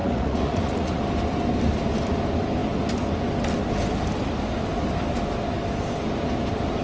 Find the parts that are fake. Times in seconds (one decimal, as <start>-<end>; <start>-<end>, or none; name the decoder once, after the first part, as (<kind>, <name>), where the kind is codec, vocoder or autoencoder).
0.0-1.0 (vocoder, Vocos)